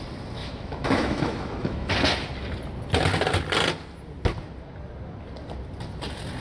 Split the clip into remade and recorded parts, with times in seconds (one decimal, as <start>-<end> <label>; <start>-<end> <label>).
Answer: 0.0-0.4 recorded; 0.4-1.9 remade; 1.9-6.4 recorded